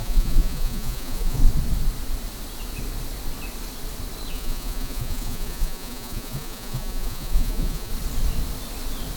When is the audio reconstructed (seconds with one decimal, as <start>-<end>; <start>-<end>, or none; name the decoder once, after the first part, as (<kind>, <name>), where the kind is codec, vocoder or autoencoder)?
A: 0.0-1.4 (vocoder, Vocos); 4.3-7.9